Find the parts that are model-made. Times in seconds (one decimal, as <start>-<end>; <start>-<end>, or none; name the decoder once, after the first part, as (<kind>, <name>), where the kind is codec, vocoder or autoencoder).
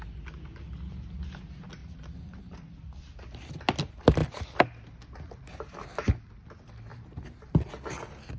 1.8-2.8 (vocoder, BigVGAN v2); 6.9-7.7